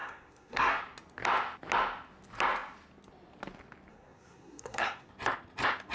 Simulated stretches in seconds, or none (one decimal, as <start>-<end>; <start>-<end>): 0.0-0.8; 3.9-5.1